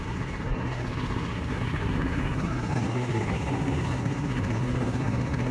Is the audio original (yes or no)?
no